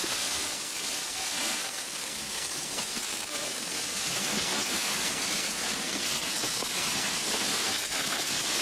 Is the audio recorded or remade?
remade